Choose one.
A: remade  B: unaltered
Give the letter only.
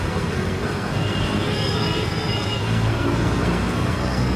A